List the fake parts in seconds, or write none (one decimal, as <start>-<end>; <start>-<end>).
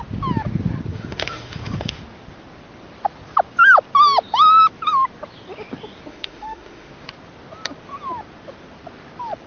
0.9-2.0; 6.1-6.9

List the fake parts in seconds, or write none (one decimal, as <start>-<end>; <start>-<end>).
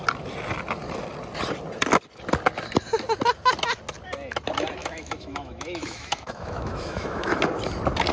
4.8-7.4